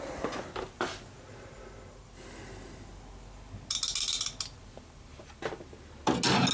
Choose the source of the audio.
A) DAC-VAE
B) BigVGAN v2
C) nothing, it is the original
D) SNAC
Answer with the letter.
C